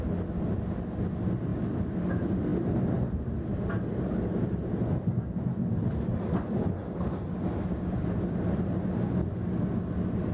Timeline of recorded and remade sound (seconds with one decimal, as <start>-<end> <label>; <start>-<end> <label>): 0.0-10.3 recorded